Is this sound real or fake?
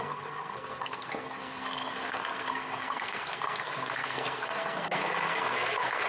fake